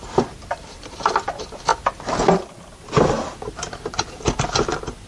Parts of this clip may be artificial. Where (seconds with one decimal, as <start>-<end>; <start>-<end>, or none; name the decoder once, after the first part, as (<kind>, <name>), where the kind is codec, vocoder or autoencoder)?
none